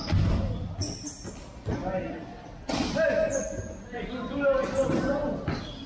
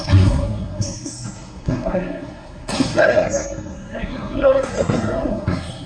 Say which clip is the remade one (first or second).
second